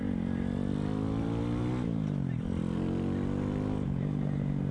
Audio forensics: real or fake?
real